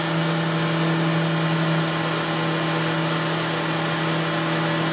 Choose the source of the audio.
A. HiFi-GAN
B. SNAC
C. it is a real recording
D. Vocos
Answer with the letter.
C